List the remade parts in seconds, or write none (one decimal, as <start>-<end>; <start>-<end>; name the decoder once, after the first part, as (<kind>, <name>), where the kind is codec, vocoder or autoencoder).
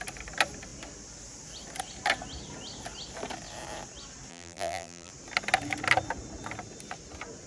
4.3-5.1 (vocoder, BigVGAN v2)